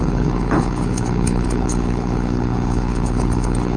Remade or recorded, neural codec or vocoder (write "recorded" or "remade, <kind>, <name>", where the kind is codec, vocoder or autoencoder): remade, codec, HILCodec